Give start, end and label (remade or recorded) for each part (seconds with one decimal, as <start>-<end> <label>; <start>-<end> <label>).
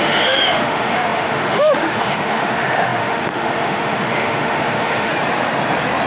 0.0-5.1 remade; 5.1-6.1 recorded